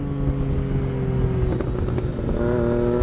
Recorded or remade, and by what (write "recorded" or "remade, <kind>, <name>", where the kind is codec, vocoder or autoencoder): recorded